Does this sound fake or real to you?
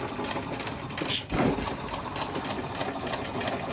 real